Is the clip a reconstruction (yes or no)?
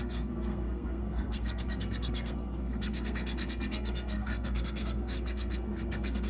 yes